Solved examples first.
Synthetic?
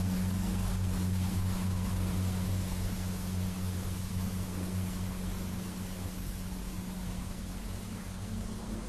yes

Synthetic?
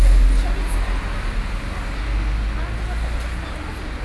no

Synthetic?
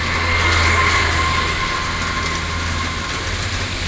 no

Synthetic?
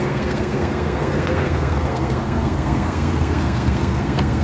yes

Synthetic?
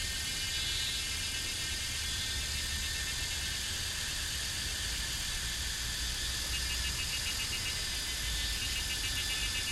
no